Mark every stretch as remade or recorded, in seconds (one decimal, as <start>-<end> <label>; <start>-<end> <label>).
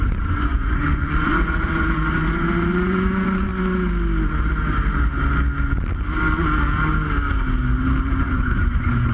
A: 0.0-3.5 remade; 3.5-8.2 recorded; 8.2-9.1 remade